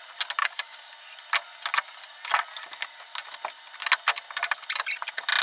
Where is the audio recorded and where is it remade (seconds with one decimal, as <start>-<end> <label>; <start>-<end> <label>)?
0.0-0.4 recorded; 0.4-0.9 remade; 0.9-5.4 recorded

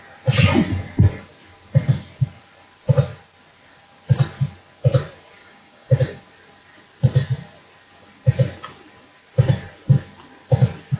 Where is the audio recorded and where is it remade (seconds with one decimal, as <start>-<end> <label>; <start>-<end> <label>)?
0.0-5.4 recorded; 5.4-6.2 remade; 6.2-11.0 recorded

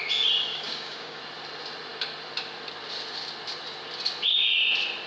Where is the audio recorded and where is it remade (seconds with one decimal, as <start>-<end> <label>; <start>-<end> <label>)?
0.0-0.5 recorded; 0.5-1.2 remade; 1.2-5.1 recorded

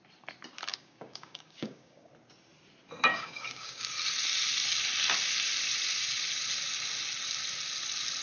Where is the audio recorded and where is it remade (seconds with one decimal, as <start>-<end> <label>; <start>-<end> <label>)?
0.0-0.7 recorded; 0.7-2.1 remade; 2.1-3.1 recorded; 3.1-3.8 remade; 3.8-8.2 recorded